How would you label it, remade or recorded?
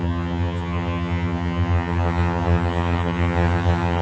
remade